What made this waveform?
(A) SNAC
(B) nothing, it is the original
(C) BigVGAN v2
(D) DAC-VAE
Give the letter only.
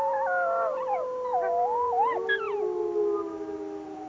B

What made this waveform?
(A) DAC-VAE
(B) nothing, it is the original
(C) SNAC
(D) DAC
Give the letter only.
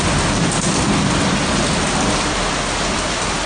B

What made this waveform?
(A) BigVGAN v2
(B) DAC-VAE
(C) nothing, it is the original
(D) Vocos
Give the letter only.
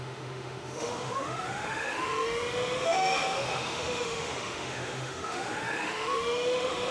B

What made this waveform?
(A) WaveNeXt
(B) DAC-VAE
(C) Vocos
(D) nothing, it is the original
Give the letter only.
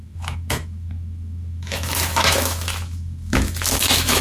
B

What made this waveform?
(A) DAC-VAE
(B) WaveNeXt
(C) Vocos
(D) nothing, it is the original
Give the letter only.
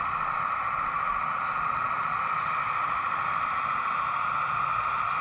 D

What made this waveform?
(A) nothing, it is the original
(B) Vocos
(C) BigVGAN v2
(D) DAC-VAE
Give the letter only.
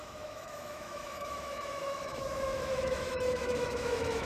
D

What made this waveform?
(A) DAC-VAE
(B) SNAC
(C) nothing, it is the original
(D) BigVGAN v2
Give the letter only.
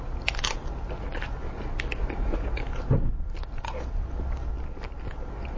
C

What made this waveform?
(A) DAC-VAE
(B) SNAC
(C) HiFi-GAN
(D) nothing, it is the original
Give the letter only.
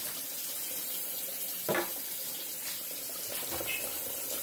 D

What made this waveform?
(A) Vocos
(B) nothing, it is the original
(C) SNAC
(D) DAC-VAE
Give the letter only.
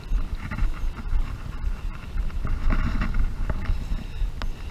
B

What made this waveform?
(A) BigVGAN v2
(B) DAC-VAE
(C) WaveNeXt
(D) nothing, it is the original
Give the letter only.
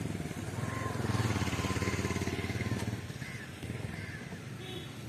D